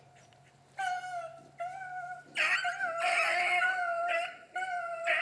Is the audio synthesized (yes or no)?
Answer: no